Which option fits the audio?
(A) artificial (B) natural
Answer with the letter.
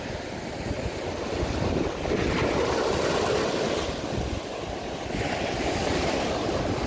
B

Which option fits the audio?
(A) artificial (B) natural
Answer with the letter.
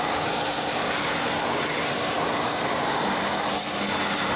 B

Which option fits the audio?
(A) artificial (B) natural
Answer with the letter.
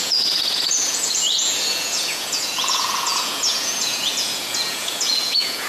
A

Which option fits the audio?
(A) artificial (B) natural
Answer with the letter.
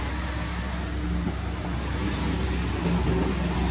B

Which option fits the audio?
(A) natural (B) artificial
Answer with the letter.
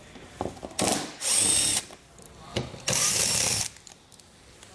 A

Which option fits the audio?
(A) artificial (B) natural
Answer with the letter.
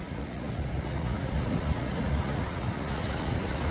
A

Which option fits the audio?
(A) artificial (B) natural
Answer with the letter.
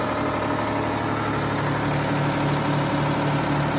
B